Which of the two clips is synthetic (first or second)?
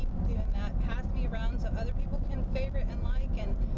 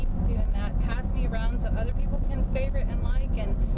first